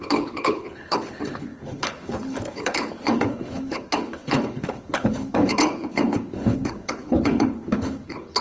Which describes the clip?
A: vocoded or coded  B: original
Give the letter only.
A